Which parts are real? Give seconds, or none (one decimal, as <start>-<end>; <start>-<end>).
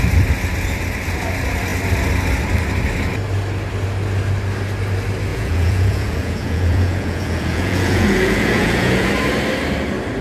0.0-5.3; 9.1-10.2